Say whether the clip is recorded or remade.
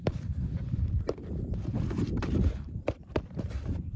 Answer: remade